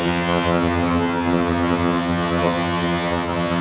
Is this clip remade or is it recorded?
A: remade